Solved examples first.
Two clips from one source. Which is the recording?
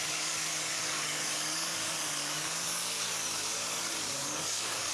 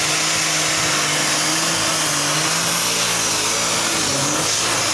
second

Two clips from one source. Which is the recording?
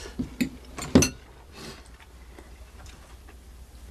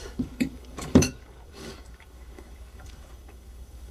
first